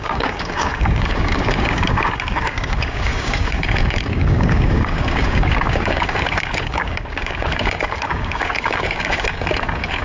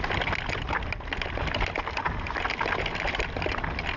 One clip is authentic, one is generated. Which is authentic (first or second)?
second